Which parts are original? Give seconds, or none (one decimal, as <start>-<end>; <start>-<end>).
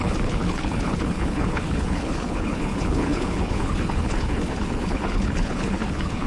none